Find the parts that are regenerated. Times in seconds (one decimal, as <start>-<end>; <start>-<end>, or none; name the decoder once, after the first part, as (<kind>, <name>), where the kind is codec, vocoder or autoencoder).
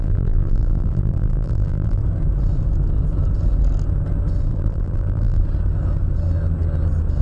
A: 0.0-2.0 (vocoder, BigVGAN v2); 4.5-5.4